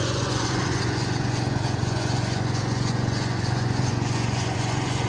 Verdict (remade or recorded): remade